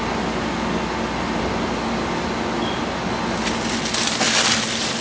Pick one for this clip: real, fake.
real